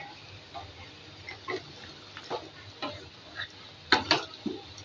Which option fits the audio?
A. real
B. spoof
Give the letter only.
A